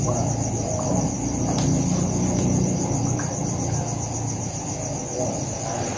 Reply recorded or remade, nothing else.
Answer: recorded